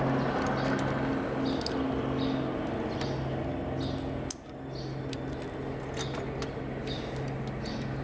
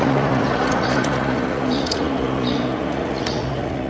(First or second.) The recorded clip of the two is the first